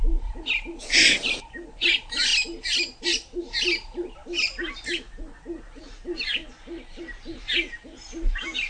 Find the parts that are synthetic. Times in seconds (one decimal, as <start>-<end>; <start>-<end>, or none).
0.0-2.3; 3.0-6.4; 7.0-8.7